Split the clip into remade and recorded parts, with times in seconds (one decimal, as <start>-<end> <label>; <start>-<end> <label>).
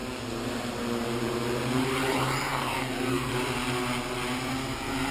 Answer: 0.0-2.5 recorded; 2.5-3.3 remade; 3.3-5.1 recorded